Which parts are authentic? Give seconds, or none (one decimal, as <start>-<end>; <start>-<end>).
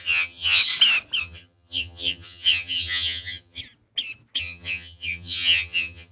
0.6-1.2; 3.6-4.4